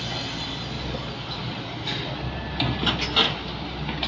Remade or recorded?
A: recorded